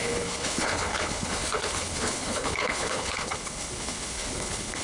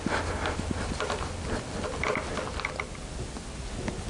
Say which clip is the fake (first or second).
first